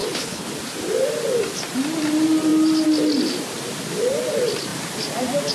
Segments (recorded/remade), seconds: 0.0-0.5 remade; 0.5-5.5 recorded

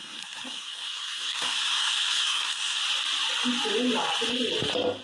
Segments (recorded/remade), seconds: 0.0-2.8 remade; 2.8-5.0 recorded

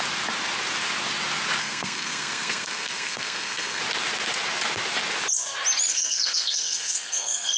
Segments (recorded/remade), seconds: 0.0-1.6 recorded; 1.6-3.8 remade; 3.8-5.9 recorded; 5.9-7.6 remade

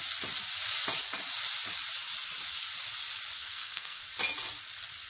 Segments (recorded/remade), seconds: 0.0-3.4 recorded; 3.4-4.0 remade; 4.0-5.1 recorded